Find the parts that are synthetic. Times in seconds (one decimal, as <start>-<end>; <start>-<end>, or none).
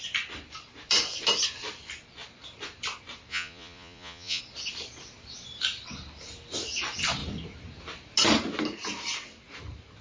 3.3-4.4